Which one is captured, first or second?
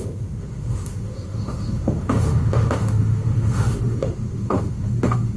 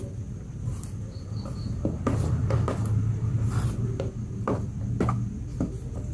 second